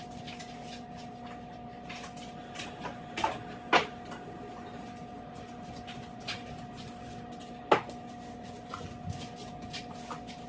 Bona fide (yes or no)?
yes